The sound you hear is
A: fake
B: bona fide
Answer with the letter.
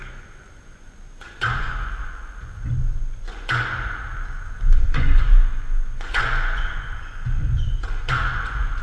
A